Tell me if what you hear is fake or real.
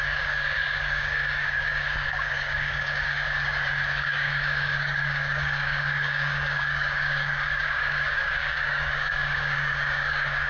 fake